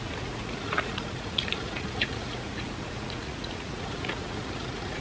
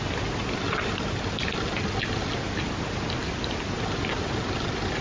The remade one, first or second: first